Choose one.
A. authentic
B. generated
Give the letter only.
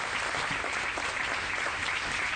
A